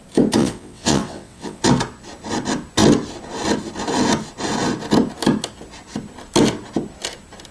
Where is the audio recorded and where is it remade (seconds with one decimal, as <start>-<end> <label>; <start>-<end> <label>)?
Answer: 0.0-0.4 recorded; 0.4-1.6 remade; 1.6-7.5 recorded